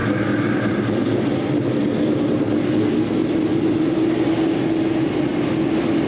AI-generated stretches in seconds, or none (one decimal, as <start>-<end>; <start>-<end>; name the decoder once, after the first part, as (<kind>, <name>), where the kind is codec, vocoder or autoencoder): 3.2-3.8 (vocoder, BigVGAN v2)